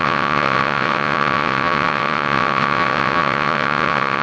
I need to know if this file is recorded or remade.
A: remade